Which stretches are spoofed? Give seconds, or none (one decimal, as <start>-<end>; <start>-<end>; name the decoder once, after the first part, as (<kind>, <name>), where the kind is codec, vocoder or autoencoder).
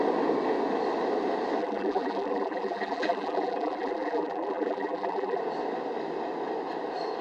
1.6-5.4 (vocoder, BigVGAN v2)